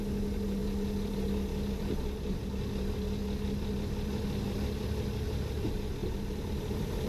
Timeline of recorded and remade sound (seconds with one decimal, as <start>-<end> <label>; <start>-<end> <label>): 0.0-6.0 recorded; 6.0-7.1 remade